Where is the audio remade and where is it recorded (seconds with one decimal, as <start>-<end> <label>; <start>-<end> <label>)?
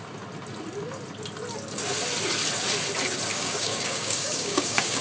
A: 0.0-3.3 recorded; 3.3-5.0 remade